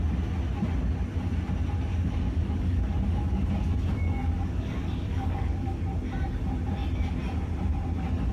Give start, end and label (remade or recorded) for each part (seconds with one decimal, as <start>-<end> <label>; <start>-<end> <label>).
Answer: 0.0-1.9 recorded; 1.9-5.8 remade; 5.8-8.3 recorded